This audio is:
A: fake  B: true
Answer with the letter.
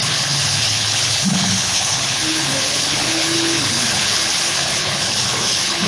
A